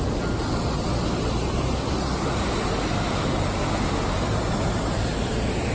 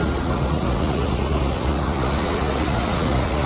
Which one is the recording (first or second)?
first